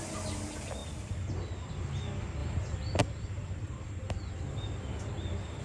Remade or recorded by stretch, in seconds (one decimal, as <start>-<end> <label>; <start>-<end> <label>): 0.0-0.8 recorded; 0.8-1.9 remade; 1.9-2.4 recorded; 2.4-3.0 remade; 3.0-5.6 recorded